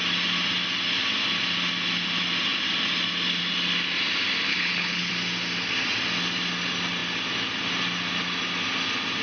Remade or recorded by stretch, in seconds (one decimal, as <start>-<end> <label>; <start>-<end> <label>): 0.0-4.5 recorded; 4.5-5.1 remade; 5.1-9.2 recorded